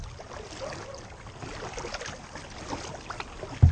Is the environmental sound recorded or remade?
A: recorded